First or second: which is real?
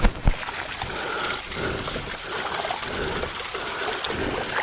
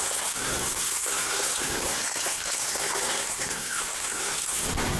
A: first